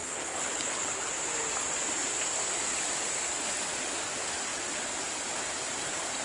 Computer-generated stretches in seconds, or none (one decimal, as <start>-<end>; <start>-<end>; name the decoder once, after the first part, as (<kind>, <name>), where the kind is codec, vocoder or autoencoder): 0.0-1.1 (codec, HILCodec)